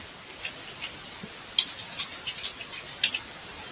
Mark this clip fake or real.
real